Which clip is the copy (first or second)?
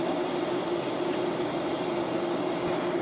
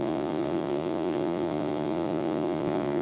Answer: second